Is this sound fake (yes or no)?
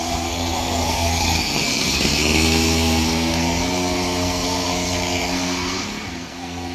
yes